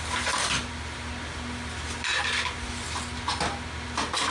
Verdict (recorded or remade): recorded